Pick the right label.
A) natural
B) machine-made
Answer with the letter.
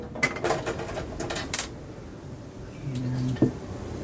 A